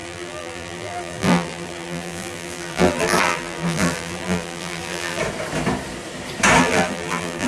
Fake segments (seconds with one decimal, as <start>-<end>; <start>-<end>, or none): 0.0-5.2; 6.6-7.5